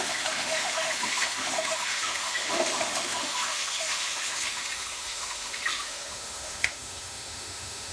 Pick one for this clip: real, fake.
fake